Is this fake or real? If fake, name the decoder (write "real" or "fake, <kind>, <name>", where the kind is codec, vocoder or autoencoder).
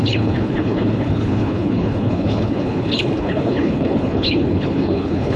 fake, codec, HILCodec